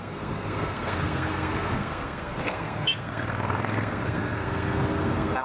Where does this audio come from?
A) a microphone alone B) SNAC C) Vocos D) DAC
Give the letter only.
B